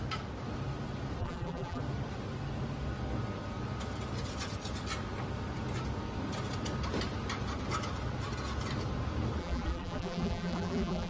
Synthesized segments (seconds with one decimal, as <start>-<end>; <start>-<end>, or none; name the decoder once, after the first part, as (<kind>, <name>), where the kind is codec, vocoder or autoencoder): 1.2-1.8 (vocoder, BigVGAN v2); 9.4-11.1